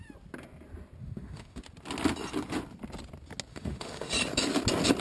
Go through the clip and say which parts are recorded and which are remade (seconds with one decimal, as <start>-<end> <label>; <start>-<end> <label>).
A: 0.0-1.0 recorded; 1.0-1.6 remade; 1.6-3.5 recorded; 3.5-4.1 remade; 4.1-5.0 recorded